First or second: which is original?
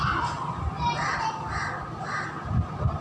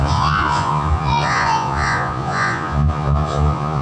first